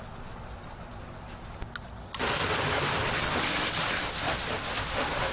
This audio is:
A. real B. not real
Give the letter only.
A